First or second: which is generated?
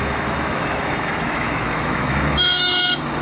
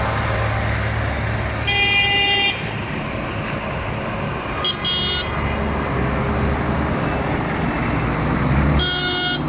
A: first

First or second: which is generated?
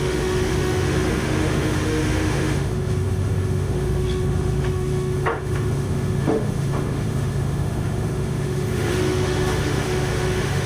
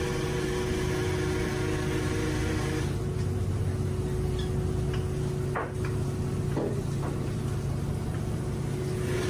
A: first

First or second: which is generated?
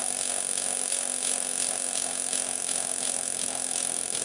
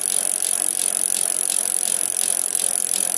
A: first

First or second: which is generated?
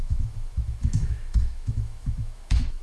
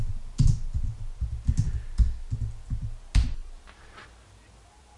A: first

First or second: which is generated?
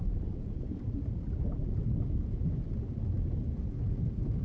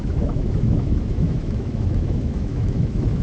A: second